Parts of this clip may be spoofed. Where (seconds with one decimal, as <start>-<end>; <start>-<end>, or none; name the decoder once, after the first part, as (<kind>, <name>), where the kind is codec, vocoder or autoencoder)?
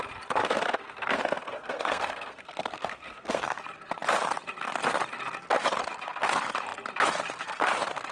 0.4-3.6 (codec, SNAC)